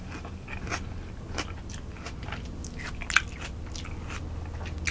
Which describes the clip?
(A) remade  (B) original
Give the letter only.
B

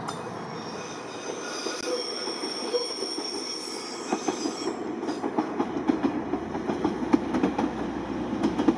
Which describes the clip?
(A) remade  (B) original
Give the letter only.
B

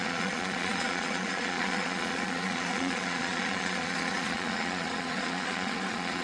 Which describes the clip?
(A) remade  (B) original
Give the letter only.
A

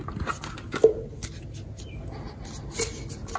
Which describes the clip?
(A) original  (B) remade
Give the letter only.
A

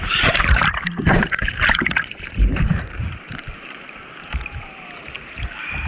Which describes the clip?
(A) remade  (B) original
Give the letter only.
A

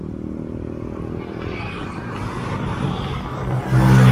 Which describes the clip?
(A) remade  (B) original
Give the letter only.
B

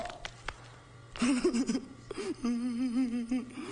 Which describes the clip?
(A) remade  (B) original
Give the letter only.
B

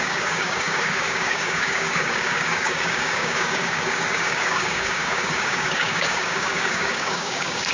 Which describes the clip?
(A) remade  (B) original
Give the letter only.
A